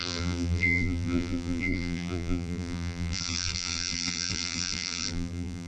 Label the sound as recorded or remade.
remade